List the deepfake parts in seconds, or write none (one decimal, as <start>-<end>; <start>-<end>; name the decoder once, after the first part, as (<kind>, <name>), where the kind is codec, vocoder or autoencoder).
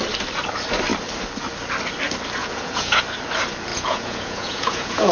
2.4-3.0 (vocoder, Vocos); 3.7-5.1